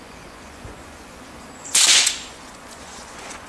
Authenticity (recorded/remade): remade